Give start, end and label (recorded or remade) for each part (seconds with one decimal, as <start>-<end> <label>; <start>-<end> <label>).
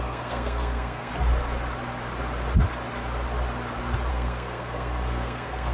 0.0-1.1 remade; 1.1-4.1 recorded; 4.1-5.7 remade